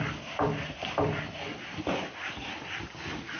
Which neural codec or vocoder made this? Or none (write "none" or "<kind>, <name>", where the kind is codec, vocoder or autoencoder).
none